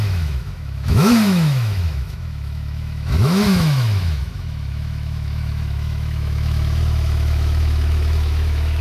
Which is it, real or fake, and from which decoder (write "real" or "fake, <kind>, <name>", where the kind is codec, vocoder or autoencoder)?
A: fake, autoencoder, DAC-VAE